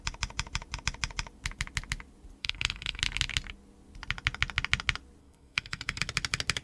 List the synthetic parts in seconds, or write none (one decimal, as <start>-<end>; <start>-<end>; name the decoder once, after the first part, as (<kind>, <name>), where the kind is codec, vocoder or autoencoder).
2.4-3.0 (codec, SNAC); 5.2-6.0